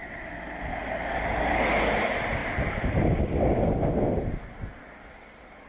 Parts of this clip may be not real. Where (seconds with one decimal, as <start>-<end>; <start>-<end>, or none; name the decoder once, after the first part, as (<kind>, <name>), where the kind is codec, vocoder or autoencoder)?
none